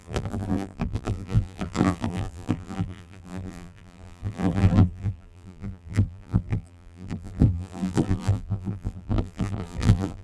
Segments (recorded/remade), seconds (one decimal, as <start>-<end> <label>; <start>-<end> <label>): 0.0-10.2 remade